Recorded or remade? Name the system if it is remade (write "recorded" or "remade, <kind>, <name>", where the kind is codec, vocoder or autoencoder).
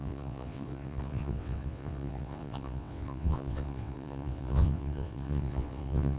remade, vocoder, WaveNeXt